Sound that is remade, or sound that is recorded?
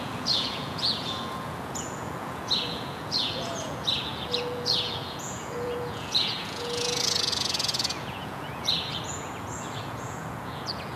remade